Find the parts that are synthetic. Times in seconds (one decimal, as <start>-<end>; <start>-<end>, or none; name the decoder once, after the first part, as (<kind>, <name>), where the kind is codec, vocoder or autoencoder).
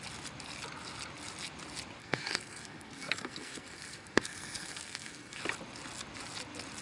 2.0-5.4 (codec, SNAC)